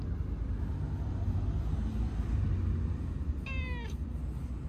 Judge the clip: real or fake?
real